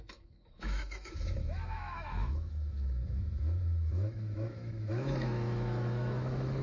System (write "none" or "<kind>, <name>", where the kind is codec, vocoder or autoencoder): autoencoder, DAC-VAE